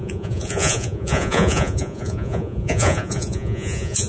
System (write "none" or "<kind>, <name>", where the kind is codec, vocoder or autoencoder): vocoder, Vocos